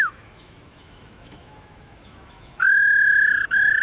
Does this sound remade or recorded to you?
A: remade